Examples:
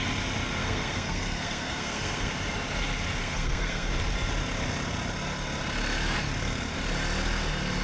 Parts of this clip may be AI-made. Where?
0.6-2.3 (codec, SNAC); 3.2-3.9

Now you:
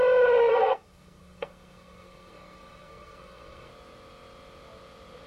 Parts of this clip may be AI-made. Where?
0.5-3.7 (codec, SNAC)

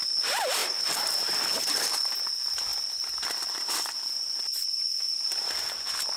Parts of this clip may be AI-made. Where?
none

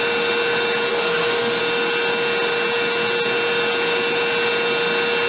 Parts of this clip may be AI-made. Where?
0.9-1.6 (codec, SNAC)

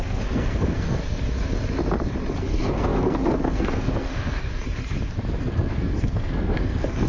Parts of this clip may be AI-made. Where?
0.0-1.0 (codec, SNAC); 2.4-4.5; 5.4-7.1

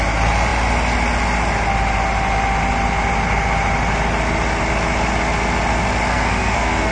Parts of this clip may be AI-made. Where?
6.1-6.9 (codec, SNAC)

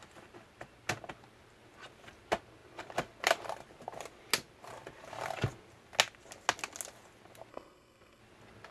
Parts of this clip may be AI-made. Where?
7.5-8.2 (codec, SNAC)

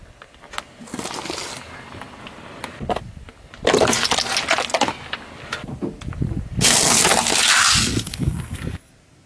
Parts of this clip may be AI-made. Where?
7.8-8.9 (codec, SNAC)